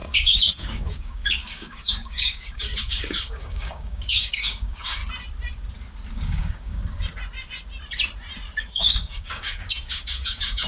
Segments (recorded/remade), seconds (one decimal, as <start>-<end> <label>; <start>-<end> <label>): 0.0-5.0 remade; 5.0-6.1 recorded; 6.1-6.8 remade; 6.8-8.6 recorded; 8.6-10.7 remade